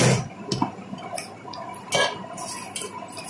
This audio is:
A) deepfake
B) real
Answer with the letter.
B